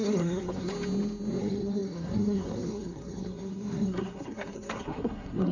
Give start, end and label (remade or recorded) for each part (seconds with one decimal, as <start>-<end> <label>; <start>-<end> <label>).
0.0-0.7 remade; 0.7-1.4 recorded; 1.4-5.5 remade